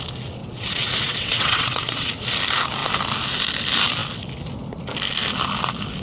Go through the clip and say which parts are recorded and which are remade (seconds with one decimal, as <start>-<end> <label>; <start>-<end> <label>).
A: 0.0-0.4 recorded; 0.4-2.1 remade; 2.1-6.0 recorded